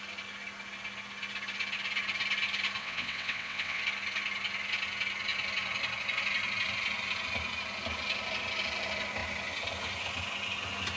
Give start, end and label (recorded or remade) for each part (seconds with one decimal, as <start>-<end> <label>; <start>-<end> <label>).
0.0-2.8 recorded; 2.8-3.8 remade; 3.8-11.0 recorded